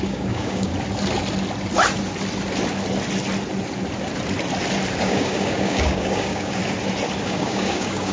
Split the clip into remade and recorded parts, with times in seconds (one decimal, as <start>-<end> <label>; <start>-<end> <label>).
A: 0.0-0.7 remade; 0.7-5.0 recorded; 5.0-6.6 remade; 6.6-7.2 recorded; 7.2-8.1 remade